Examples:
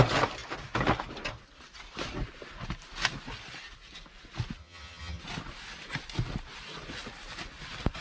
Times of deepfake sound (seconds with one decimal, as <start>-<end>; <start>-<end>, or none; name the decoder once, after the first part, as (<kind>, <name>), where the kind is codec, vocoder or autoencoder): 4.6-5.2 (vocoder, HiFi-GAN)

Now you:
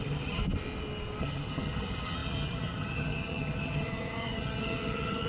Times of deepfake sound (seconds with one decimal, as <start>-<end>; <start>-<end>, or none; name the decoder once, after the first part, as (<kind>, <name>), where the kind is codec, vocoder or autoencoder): 0.0-0.4 (vocoder, HiFi-GAN); 1.2-5.3

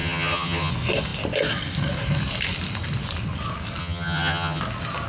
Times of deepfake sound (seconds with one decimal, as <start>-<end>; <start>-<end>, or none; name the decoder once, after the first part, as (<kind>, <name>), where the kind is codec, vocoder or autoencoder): 0.0-0.7 (vocoder, HiFi-GAN); 3.8-4.6